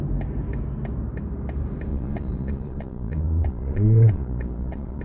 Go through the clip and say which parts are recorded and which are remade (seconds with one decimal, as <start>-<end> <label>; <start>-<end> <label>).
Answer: 0.0-1.9 recorded; 1.9-5.0 remade